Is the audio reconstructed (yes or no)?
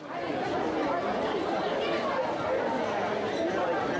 no